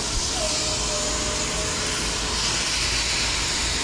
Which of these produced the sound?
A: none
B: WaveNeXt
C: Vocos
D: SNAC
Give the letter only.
A